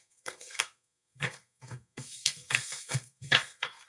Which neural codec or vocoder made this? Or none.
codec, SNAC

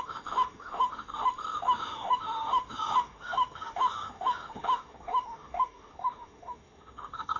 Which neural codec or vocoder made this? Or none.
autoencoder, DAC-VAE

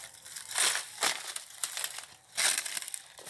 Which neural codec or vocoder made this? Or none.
none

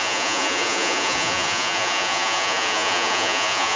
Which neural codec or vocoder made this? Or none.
vocoder, Vocos